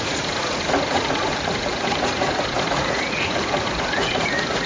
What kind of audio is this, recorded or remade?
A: remade